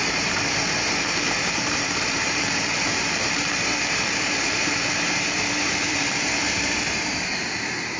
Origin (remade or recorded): remade